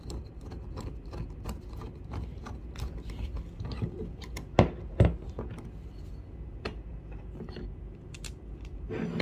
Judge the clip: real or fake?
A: real